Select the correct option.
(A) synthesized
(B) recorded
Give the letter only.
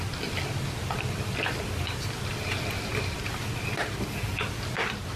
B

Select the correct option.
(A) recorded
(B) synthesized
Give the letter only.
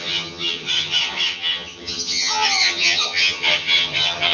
B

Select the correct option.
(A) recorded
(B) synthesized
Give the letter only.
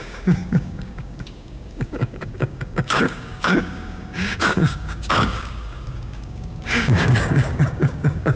B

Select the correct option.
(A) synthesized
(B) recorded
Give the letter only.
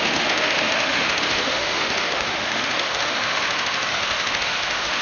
A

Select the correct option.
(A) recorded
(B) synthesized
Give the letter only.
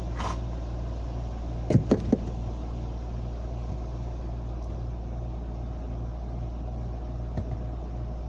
A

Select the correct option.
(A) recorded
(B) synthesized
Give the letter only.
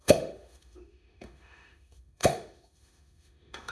B